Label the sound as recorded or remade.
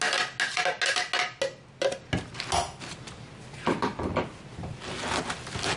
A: recorded